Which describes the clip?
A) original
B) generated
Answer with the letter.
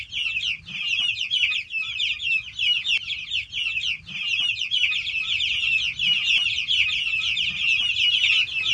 A